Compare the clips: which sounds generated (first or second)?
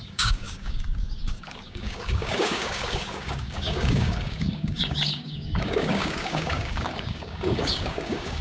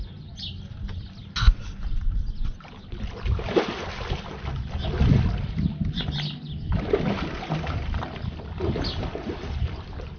first